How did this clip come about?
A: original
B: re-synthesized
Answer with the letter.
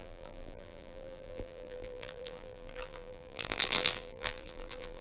B